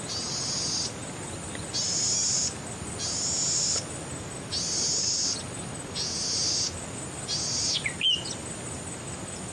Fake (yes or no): no